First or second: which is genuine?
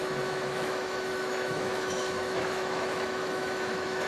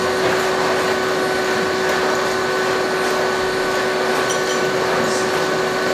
second